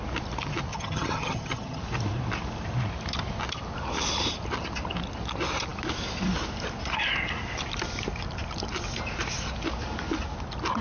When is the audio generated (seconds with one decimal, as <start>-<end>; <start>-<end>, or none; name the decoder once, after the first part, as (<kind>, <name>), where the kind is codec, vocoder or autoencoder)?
0.7-1.8 (vocoder, HiFi-GAN)